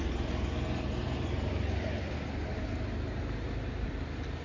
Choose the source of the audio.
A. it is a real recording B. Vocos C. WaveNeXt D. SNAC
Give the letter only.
A